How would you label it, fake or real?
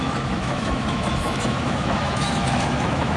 fake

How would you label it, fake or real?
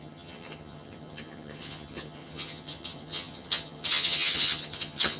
fake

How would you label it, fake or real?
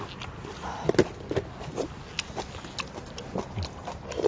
real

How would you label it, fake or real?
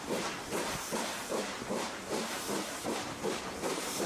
fake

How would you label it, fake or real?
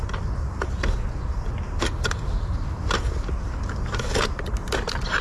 real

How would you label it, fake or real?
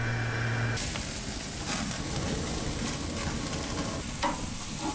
real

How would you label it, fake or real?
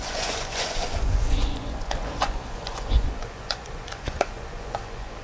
fake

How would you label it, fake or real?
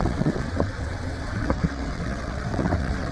fake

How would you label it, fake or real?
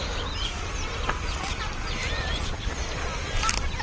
real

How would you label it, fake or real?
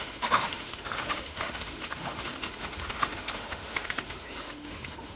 fake